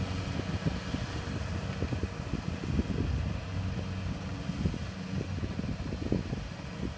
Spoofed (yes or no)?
no